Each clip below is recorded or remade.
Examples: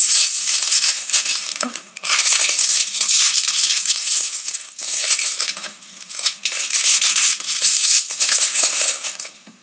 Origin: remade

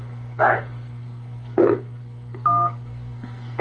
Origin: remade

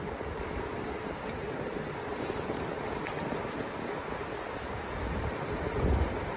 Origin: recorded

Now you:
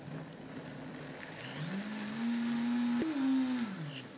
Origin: recorded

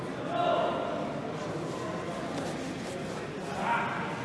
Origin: recorded